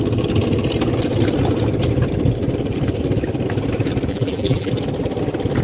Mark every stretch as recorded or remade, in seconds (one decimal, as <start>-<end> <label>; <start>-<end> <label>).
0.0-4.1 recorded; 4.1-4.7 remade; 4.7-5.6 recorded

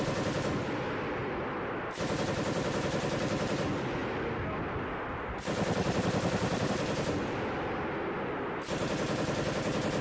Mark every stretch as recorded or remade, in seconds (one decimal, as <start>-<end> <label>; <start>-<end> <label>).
0.0-10.0 recorded

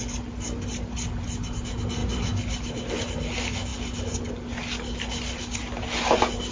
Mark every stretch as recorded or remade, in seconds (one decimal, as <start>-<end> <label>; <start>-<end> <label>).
0.0-6.5 recorded

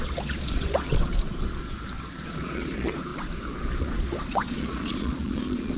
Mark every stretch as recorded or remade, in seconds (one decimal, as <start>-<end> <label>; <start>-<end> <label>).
0.0-1.1 remade; 1.1-2.2 recorded; 2.2-3.1 remade; 3.1-3.8 recorded; 3.8-5.8 remade

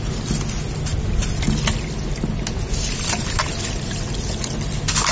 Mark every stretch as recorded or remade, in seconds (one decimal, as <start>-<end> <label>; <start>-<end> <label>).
0.0-5.1 recorded

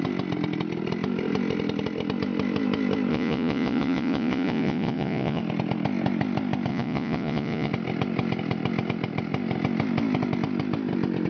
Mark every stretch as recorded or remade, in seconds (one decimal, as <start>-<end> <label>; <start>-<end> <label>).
0.0-3.1 recorded; 3.1-5.4 remade; 5.4-6.7 recorded; 6.7-7.7 remade; 7.7-11.3 recorded